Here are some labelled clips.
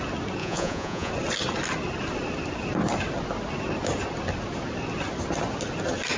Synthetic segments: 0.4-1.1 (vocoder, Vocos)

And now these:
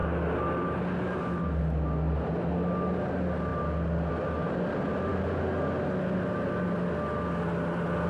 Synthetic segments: none

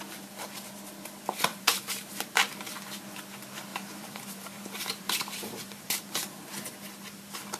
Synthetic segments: 1.5-2.5 (vocoder, BigVGAN v2); 3.7-5.9

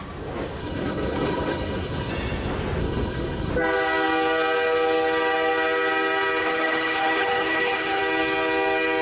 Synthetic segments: 0.6-2.1 (codec, HILCodec); 2.8-3.5; 6.4-8.0

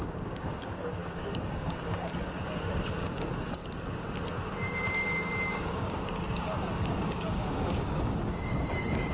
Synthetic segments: 0.0-3.6 (codec, DAC); 5.5-9.1

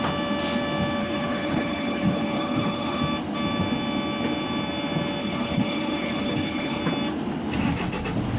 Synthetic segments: 1.0-3.0 (codec, HILCodec); 5.2-6.8